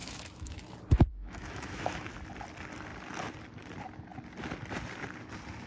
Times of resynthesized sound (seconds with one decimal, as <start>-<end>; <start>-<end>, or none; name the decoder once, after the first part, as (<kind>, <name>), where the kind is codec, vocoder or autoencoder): 0.0-0.6 (autoencoder, DAC-VAE); 1.1-2.1

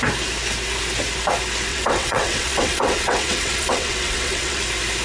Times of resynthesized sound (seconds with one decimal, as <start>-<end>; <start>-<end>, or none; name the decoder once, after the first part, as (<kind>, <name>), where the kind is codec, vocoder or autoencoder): 1.7-4.6 (vocoder, WaveNeXt)

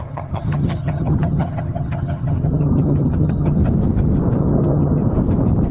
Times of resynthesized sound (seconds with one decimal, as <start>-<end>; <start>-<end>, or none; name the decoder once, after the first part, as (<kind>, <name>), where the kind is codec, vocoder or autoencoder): 0.0-3.6 (vocoder, HiFi-GAN); 4.4-5.0

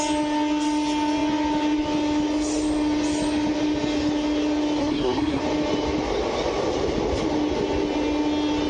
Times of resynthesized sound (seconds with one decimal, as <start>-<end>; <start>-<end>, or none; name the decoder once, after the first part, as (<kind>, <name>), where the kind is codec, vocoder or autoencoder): 4.8-5.4 (codec, SNAC)

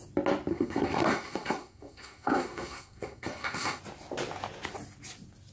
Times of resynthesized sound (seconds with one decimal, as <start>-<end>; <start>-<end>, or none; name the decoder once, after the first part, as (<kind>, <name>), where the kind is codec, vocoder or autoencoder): 0.5-3.8 (codec, SNAC)

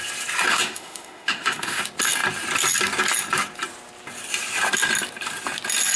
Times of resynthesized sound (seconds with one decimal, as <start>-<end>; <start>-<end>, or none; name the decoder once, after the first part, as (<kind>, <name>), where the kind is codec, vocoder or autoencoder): 0.5-1.8 (autoencoder, DAC-VAE)